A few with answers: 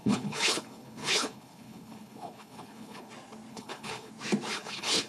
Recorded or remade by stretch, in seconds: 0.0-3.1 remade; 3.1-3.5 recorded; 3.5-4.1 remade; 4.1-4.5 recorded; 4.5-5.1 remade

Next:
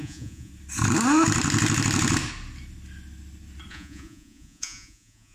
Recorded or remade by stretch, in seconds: 0.0-0.5 remade; 0.5-3.7 recorded; 3.7-5.3 remade

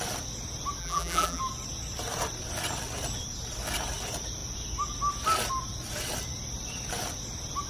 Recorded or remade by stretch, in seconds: 0.0-0.8 recorded; 0.8-1.4 remade; 1.4-7.7 recorded